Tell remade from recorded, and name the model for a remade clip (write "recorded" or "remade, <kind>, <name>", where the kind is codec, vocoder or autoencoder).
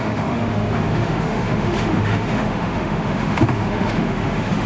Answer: remade, autoencoder, DAC-VAE